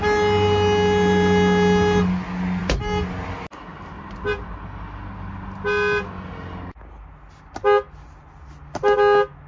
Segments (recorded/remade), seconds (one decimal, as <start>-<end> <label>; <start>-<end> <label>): 0.0-9.5 recorded